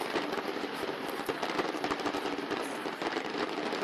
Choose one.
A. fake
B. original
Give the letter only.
B